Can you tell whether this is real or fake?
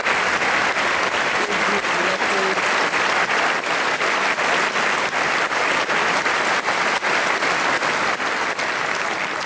real